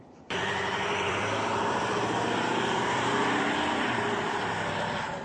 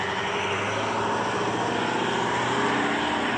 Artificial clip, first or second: first